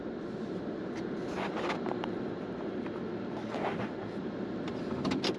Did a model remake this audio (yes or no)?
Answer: no